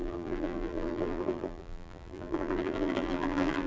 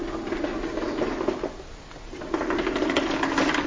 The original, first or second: second